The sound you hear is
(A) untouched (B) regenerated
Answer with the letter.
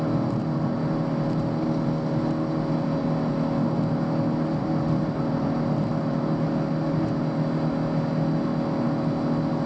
A